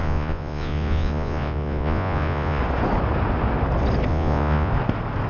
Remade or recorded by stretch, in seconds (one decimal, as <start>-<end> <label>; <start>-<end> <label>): 0.0-2.6 remade; 2.6-4.1 recorded; 4.1-4.7 remade; 4.7-5.3 recorded